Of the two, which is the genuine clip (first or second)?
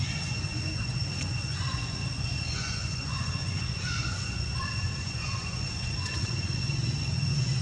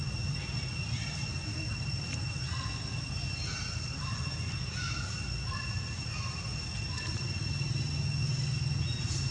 second